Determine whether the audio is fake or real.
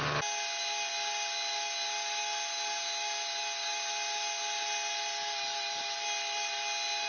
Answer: real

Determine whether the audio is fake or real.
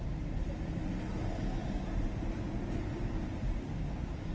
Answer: real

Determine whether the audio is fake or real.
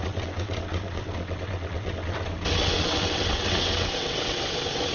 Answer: fake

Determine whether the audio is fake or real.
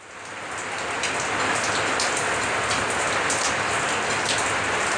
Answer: real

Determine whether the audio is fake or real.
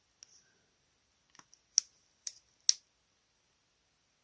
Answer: real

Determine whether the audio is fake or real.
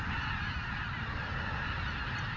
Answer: real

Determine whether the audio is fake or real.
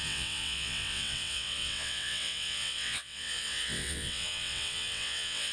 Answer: fake